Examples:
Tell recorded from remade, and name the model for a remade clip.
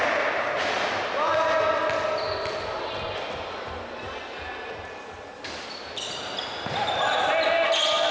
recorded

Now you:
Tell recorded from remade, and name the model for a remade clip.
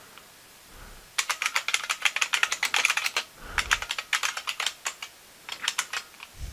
recorded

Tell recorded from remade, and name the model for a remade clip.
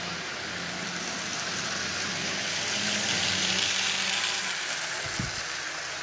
recorded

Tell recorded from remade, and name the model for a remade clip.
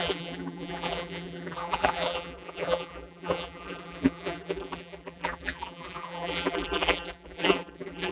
remade, vocoder, BigVGAN v2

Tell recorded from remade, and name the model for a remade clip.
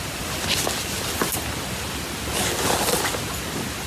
recorded